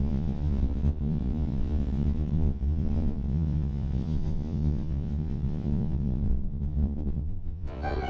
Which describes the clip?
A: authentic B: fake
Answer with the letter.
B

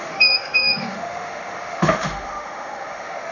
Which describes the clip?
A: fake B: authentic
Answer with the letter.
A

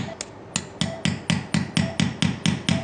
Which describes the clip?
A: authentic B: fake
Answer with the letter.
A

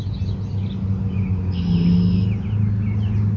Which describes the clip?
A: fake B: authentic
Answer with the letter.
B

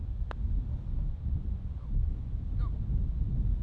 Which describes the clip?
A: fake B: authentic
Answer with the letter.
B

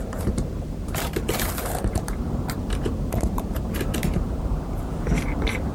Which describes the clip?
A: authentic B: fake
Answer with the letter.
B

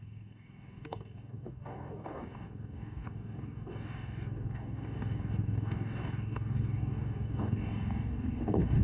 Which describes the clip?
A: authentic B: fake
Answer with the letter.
B